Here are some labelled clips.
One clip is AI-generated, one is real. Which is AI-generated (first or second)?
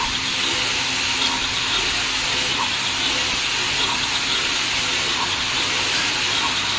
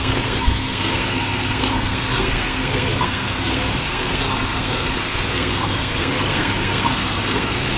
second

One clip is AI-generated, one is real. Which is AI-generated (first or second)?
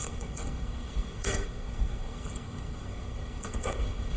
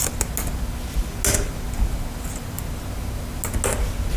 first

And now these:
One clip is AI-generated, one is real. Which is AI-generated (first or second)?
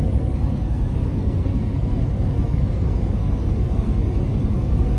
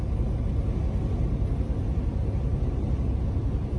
first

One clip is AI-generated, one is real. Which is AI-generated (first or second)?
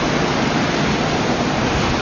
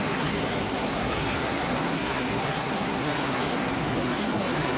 second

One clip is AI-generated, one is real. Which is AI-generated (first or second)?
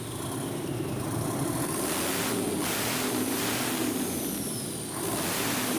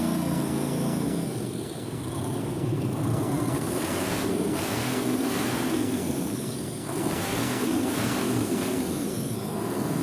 second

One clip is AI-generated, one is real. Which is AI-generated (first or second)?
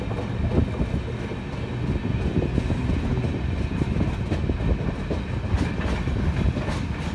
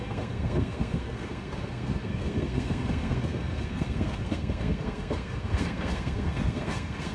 second